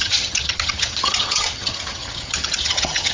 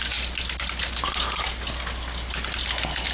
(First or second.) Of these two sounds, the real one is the second